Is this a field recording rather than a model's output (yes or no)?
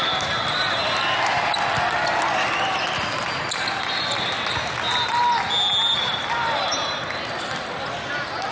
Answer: yes